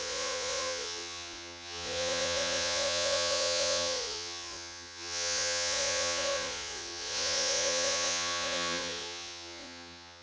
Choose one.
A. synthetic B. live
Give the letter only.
A